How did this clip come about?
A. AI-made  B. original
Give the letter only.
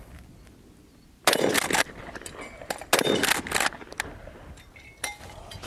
B